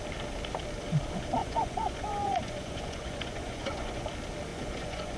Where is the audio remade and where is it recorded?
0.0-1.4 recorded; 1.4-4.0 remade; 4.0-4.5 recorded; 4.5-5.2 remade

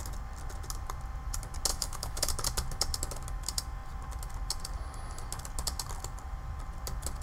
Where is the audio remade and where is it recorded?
0.0-1.7 recorded; 1.7-2.3 remade; 2.3-7.2 recorded

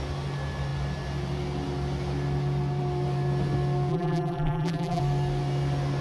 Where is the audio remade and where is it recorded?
0.0-3.9 recorded; 3.9-5.0 remade; 5.0-6.0 recorded

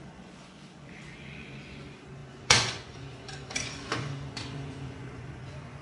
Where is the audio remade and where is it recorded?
0.0-5.8 remade